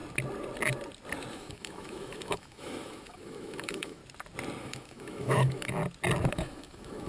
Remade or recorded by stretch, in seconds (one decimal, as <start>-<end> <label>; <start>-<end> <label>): 0.0-1.3 recorded; 1.3-4.0 remade; 4.0-4.6 recorded; 4.6-5.8 remade; 5.8-6.3 recorded; 6.3-7.1 remade